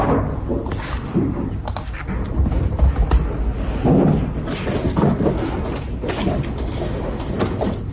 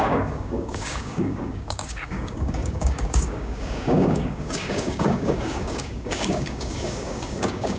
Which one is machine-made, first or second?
second